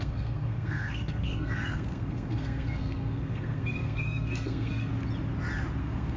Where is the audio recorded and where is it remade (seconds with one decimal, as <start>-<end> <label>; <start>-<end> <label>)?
0.0-4.9 remade; 4.9-5.8 recorded; 5.8-6.2 remade